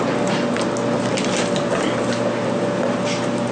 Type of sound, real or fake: real